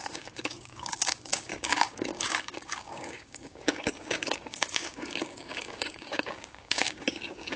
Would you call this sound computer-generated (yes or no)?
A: yes